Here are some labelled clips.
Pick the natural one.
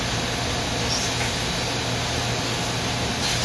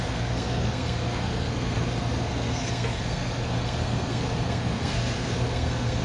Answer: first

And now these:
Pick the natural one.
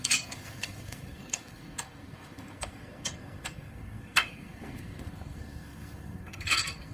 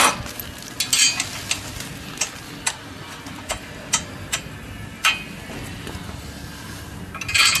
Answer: second